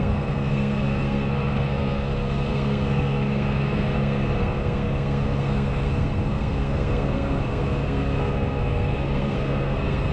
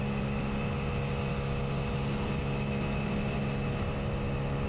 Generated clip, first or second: first